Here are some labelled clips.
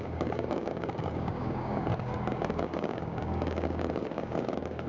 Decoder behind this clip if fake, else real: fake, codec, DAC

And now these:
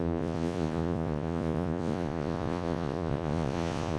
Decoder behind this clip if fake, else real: fake, vocoder, Vocos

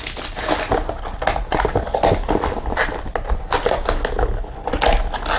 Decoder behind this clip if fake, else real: real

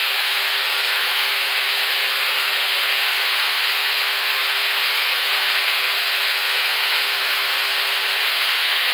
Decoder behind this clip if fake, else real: fake, codec, SNAC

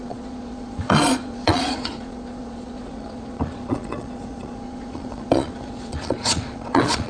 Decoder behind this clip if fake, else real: fake, vocoder, Vocos